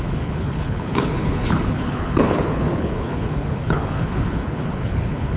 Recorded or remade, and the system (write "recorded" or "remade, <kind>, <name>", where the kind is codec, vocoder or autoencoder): remade, codec, HILCodec